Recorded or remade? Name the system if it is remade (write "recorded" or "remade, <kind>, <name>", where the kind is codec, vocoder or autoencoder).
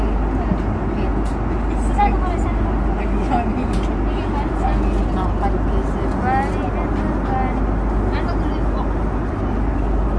recorded